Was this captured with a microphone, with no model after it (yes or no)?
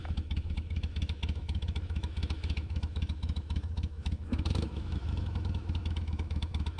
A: no